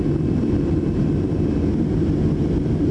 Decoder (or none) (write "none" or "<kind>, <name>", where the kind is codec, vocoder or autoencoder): none